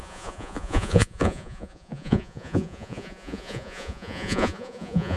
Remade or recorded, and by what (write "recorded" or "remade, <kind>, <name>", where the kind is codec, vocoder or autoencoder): remade, vocoder, Vocos